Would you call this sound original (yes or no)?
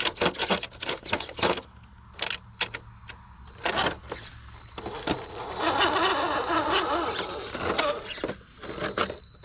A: yes